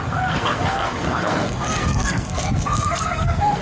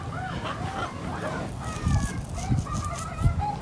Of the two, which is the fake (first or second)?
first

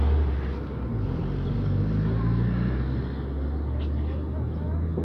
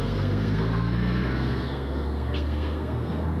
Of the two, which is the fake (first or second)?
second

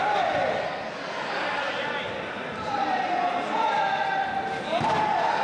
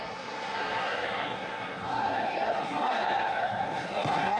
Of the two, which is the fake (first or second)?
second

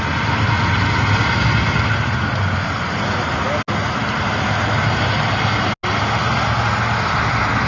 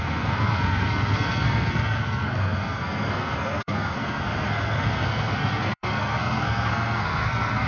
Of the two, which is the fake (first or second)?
second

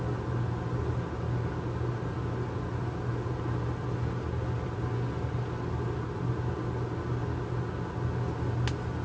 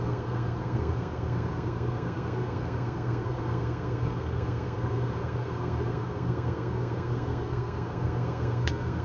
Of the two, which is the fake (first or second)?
second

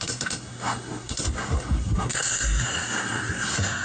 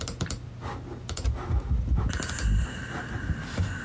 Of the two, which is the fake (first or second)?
first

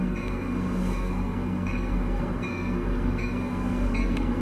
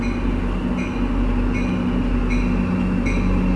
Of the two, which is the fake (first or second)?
first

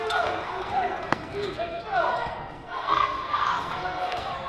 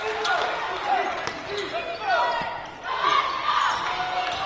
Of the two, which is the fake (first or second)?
first